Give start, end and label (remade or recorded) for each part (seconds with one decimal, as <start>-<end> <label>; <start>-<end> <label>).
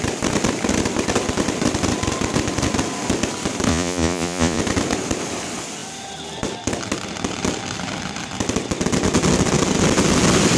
0.0-3.7 recorded; 3.7-4.6 remade; 4.6-10.6 recorded